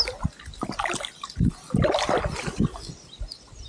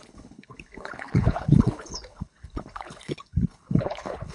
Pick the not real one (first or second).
second